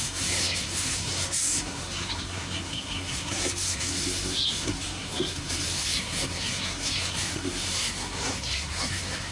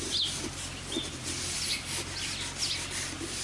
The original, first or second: second